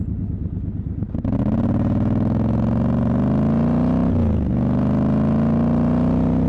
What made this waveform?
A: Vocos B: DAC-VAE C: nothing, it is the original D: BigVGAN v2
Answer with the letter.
C